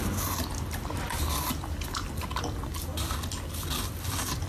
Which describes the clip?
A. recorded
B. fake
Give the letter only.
A